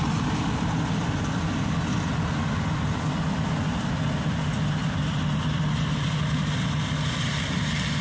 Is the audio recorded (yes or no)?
yes